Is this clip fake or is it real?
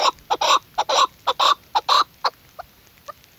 real